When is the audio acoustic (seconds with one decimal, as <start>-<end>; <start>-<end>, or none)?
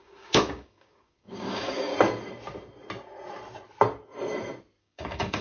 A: 1.9-4.8